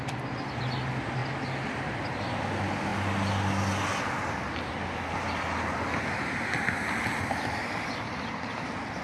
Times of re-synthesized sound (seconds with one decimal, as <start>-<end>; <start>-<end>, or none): none